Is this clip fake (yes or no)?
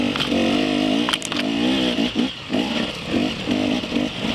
no